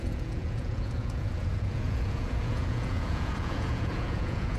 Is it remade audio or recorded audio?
remade